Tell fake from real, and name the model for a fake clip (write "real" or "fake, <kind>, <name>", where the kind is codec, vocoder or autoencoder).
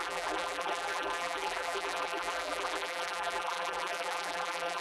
fake, vocoder, BigVGAN v2